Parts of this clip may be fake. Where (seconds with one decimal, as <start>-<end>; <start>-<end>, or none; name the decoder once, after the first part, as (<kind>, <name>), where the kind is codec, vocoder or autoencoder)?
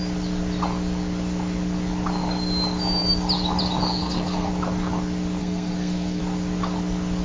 4.0-4.5 (codec, SNAC); 5.4-6.2